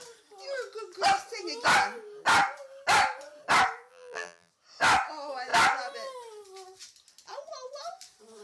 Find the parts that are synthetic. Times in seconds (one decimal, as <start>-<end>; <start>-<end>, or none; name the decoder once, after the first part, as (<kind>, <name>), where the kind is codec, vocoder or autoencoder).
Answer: 3.9-4.5 (vocoder, BigVGAN v2)